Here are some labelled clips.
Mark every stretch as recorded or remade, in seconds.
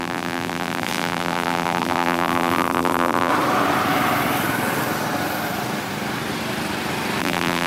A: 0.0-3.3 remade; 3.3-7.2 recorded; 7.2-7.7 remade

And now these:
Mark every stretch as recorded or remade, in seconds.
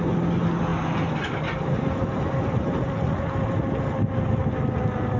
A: 0.0-5.2 recorded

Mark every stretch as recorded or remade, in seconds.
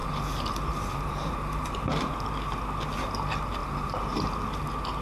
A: 0.0-2.1 remade; 2.1-3.6 recorded; 3.6-4.3 remade; 4.3-5.0 recorded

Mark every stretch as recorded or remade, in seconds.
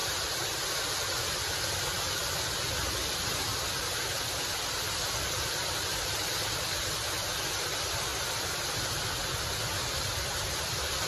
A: 0.0-0.9 recorded; 0.9-8.1 remade; 8.1-10.0 recorded; 10.0-11.1 remade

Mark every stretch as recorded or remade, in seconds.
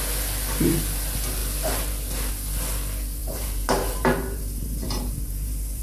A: 0.0-3.2 recorded; 3.2-5.8 remade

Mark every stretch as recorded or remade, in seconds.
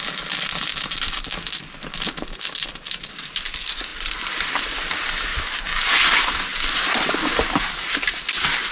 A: 0.0-0.7 recorded; 0.7-1.3 remade; 1.3-3.9 recorded; 3.9-4.6 remade; 4.6-6.5 recorded; 6.5-8.2 remade; 8.2-8.7 recorded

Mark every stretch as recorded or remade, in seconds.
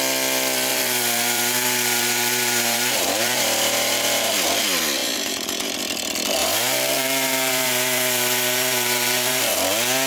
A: 0.0-0.7 recorded; 0.7-4.3 remade; 4.3-5.0 recorded; 5.0-5.8 remade; 5.8-6.4 recorded; 6.4-9.4 remade; 9.4-10.1 recorded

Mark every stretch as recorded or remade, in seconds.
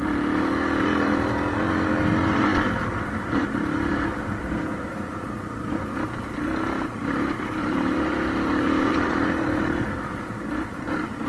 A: 0.0-2.5 recorded; 2.5-5.7 remade; 5.7-7.6 recorded; 7.6-11.3 remade